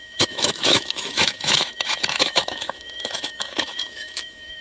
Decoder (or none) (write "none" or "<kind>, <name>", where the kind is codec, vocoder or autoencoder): autoencoder, DAC-VAE